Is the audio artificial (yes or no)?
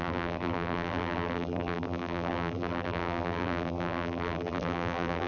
yes